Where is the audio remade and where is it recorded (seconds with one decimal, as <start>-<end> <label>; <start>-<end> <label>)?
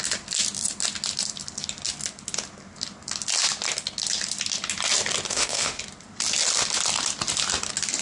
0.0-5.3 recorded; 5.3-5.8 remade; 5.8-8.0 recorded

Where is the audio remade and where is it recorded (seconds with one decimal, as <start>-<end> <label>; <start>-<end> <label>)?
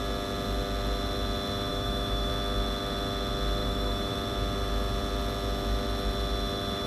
0.0-1.7 recorded; 1.7-2.3 remade; 2.3-3.6 recorded; 3.6-4.1 remade; 4.1-6.9 recorded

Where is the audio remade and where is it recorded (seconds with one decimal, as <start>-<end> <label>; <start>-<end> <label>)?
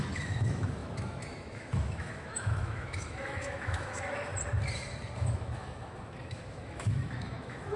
0.0-4.3 remade; 4.3-5.2 recorded; 5.2-7.8 remade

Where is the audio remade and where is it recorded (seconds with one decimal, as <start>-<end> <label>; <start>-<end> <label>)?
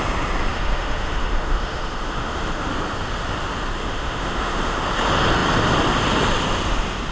0.0-0.5 recorded; 0.5-2.7 remade; 2.7-3.8 recorded; 3.8-4.8 remade; 4.8-7.1 recorded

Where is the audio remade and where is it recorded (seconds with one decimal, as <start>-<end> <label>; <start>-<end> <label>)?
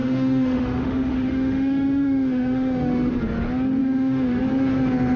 0.0-3.1 remade; 3.1-3.8 recorded; 3.8-4.4 remade; 4.4-5.2 recorded